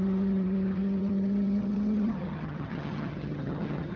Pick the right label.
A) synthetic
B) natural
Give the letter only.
A